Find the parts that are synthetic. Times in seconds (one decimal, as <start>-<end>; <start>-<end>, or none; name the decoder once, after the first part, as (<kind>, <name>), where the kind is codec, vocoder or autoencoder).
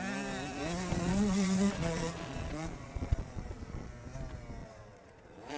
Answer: 0.9-3.9 (vocoder, Vocos); 4.6-5.6